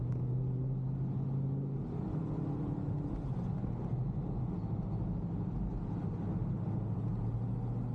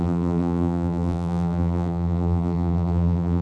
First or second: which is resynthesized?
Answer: second